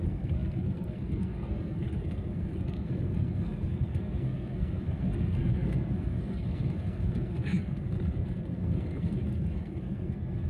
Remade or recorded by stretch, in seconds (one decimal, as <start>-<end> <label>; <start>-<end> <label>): 0.0-10.5 remade